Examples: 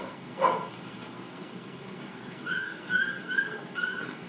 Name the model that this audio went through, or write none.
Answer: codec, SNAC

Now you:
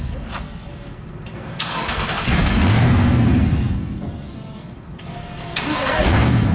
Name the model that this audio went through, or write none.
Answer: codec, SNAC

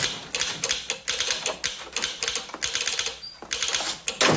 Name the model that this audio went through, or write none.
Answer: none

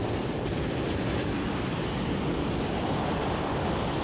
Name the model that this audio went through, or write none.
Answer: none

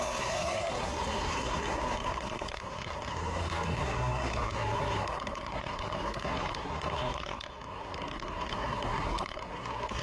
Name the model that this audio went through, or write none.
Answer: codec, SNAC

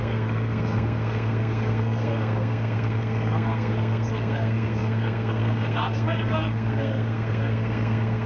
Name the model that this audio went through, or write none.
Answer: codec, SNAC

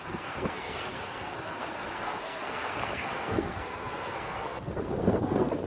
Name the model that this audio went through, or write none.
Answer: codec, SNAC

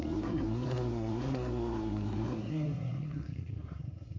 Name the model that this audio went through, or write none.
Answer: codec, SNAC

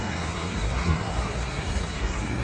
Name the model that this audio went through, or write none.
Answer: codec, SNAC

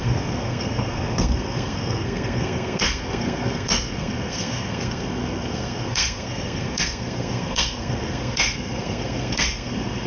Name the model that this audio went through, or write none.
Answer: codec, SNAC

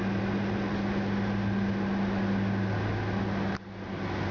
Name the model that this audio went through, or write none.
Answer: none